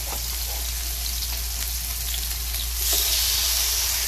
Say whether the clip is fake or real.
real